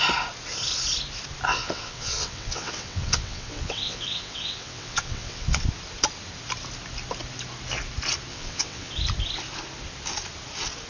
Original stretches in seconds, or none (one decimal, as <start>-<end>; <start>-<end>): 0.0-1.5; 5.6-8.3; 8.9-10.9